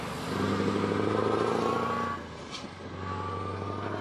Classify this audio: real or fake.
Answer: real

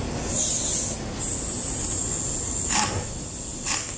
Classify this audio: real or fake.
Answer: real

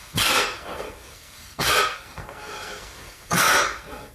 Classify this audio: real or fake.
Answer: fake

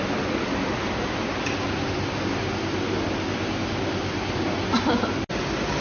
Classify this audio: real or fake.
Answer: real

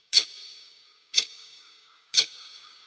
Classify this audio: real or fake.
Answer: fake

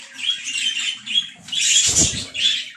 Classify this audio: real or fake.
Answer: real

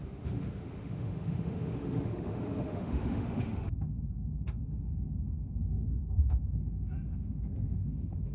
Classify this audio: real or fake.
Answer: fake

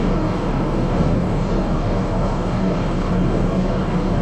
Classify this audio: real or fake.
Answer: fake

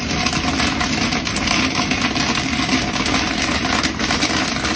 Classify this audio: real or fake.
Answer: real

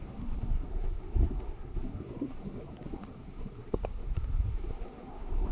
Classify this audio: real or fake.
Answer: fake